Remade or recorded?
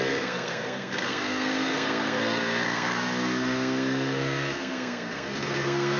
remade